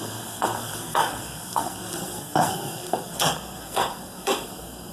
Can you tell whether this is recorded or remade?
remade